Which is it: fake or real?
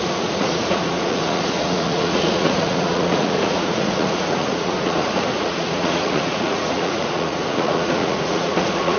fake